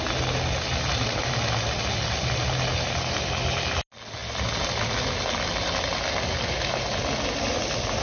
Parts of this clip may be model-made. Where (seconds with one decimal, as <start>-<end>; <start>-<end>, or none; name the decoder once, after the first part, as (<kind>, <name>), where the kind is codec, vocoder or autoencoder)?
none